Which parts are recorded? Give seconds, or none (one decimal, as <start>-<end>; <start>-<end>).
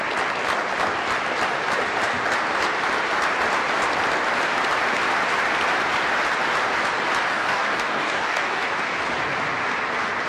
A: 0.0-7.3; 8.6-10.3